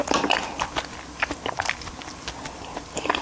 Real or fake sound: real